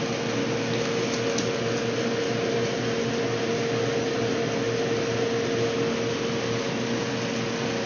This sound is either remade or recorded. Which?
recorded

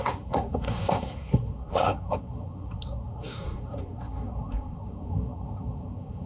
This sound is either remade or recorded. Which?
remade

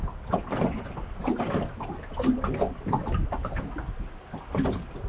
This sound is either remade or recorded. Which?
recorded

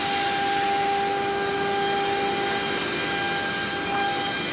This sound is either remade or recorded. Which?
recorded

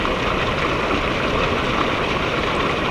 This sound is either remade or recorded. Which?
recorded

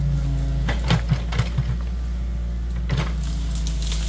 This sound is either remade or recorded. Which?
recorded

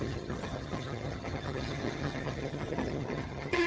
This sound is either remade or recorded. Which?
remade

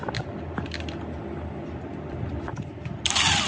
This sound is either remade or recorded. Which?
recorded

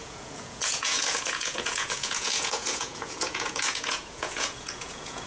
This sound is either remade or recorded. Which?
remade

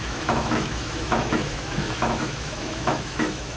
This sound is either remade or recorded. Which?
remade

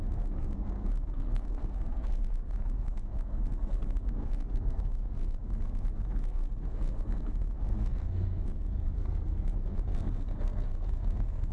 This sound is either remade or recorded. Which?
remade